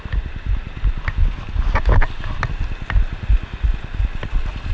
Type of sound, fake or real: real